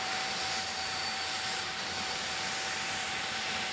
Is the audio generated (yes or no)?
yes